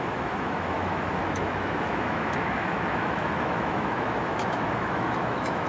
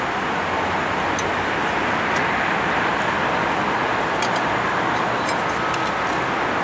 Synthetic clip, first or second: first